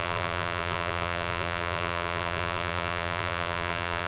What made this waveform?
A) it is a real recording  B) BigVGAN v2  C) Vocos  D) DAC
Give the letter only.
B